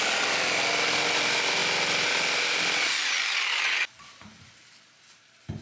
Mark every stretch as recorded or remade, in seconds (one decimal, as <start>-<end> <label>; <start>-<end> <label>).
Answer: 0.0-5.6 recorded